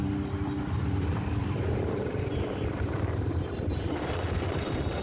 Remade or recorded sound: remade